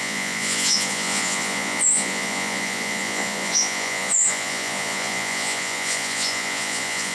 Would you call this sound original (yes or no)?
no